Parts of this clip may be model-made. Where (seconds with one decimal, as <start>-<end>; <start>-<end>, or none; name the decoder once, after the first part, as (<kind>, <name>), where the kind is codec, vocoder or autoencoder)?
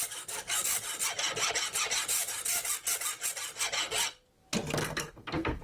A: 4.8-5.6 (codec, SNAC)